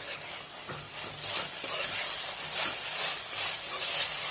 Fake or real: real